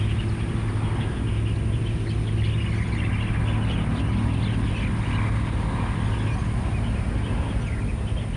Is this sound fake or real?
real